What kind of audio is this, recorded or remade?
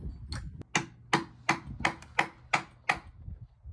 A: recorded